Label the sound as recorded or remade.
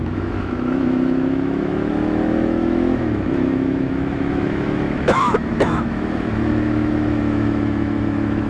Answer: remade